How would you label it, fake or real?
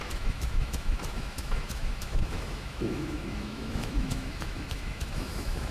fake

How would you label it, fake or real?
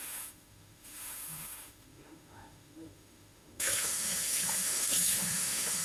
fake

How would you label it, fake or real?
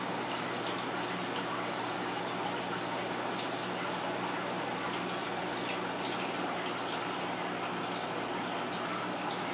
real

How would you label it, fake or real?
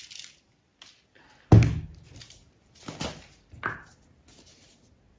real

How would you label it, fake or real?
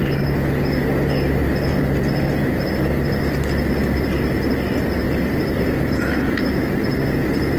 real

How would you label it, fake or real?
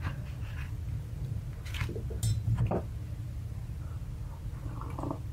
real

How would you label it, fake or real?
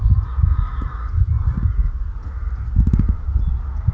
real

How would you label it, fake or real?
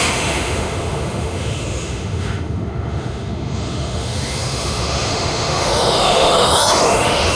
fake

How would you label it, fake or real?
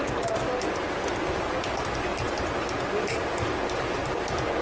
real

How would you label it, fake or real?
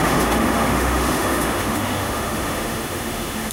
fake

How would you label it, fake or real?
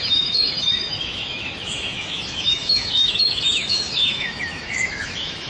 fake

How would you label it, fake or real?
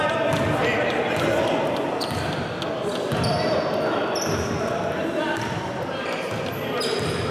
real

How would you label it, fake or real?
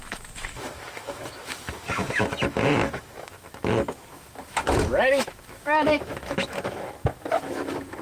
fake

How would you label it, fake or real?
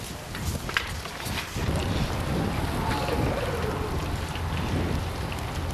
real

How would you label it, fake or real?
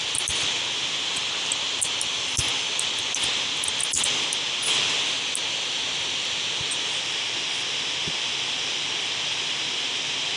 real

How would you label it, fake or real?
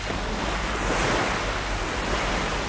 real